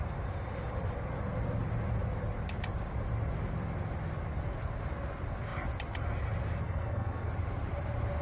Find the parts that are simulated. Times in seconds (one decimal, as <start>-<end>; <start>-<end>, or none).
6.6-7.3